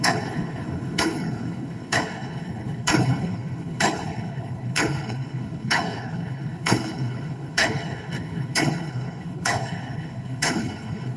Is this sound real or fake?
fake